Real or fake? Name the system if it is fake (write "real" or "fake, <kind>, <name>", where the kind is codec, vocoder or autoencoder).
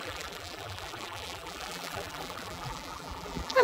fake, vocoder, BigVGAN v2